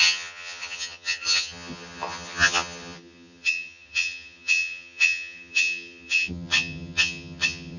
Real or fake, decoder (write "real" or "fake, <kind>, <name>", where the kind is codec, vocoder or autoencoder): fake, vocoder, HiFi-GAN